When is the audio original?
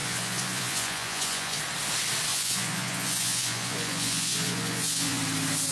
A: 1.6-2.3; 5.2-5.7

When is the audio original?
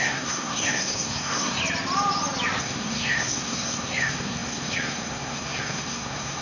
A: 1.6-2.6